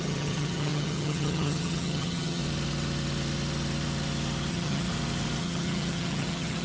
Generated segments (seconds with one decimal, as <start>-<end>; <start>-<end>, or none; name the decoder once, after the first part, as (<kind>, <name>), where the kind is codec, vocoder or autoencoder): 0.0-2.4 (vocoder, HiFi-GAN); 4.5-4.9; 5.4-6.6